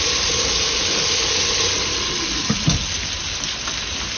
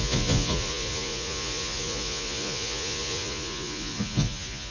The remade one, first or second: second